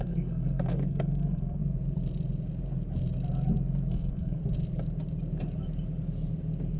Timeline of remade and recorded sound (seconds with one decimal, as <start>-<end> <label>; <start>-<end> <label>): 0.0-1.6 remade; 1.6-3.9 recorded; 3.9-4.4 remade; 4.4-6.8 recorded